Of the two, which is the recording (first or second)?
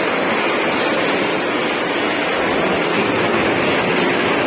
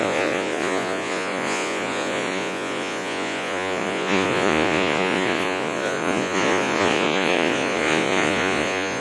first